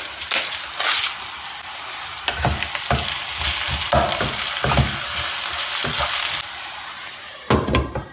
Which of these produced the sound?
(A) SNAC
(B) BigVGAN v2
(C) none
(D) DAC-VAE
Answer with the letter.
C